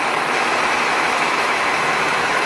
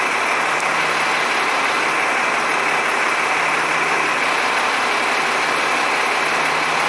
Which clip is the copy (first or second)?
first